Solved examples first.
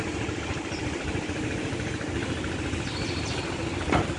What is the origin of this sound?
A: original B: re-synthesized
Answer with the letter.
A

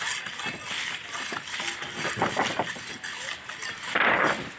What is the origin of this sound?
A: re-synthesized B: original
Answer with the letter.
B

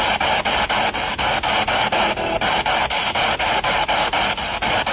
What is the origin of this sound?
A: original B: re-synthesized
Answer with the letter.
A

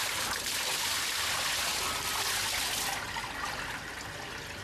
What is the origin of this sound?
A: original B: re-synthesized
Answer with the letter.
A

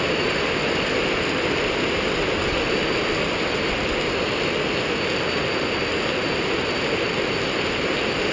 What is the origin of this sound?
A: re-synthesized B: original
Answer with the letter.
B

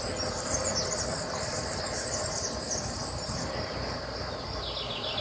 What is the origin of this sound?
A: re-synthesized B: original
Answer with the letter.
A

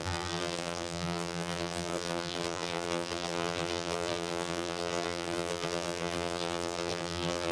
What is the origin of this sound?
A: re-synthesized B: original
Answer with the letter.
A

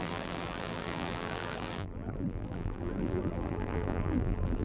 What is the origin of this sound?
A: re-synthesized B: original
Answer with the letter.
A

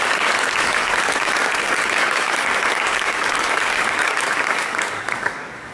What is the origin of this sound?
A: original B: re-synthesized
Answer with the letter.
B